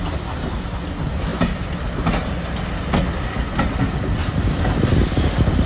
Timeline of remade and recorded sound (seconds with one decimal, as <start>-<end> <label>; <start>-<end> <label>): 0.0-4.2 recorded; 4.2-4.9 remade; 4.9-5.7 recorded